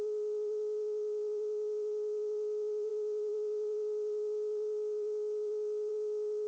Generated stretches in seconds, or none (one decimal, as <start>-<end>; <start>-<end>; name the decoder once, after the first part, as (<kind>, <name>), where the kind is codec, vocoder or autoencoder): none